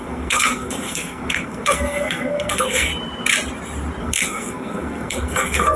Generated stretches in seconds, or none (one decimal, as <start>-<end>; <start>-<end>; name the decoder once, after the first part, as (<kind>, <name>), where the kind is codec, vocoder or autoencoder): 0.0-2.9 (codec, SNAC); 4.0-5.8